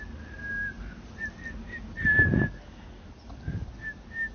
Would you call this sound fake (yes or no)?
no